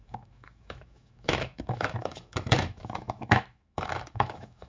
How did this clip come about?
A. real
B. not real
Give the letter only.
B